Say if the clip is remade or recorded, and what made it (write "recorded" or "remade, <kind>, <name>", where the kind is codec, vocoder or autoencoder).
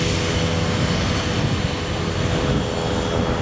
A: recorded